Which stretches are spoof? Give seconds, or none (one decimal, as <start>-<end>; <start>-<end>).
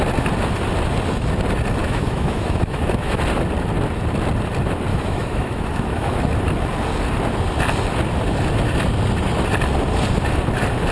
1.8-3.2; 4.9-6.2